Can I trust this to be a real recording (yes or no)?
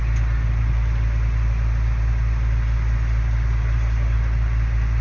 yes